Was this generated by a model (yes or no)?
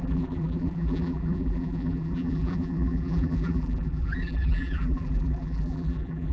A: yes